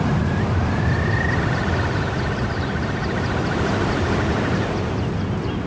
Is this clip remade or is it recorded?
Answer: recorded